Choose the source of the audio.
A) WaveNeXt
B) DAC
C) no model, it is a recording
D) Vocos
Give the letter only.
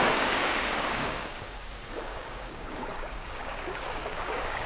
B